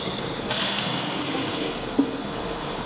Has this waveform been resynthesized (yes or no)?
yes